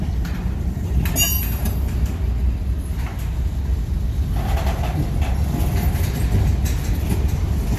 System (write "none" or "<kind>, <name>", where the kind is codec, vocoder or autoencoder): none